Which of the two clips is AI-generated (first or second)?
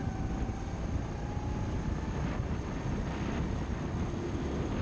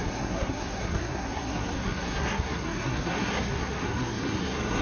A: second